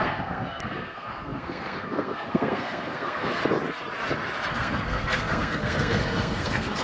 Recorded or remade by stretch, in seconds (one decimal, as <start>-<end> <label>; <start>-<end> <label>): 0.0-3.4 remade; 3.4-4.5 recorded; 4.5-6.8 remade